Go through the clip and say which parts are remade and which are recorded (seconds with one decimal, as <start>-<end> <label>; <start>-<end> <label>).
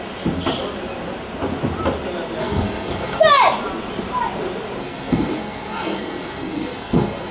0.0-2.4 recorded; 2.4-3.2 remade; 3.2-4.8 recorded; 4.8-7.3 remade